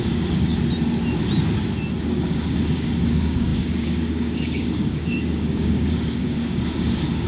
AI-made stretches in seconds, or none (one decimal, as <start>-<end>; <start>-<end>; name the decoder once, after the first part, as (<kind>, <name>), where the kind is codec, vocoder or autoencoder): 0.0-0.5 (codec, DAC); 2.0-7.3